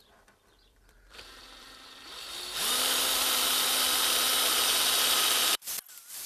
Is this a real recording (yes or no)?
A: no